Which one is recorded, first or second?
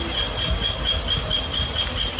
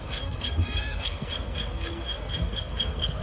first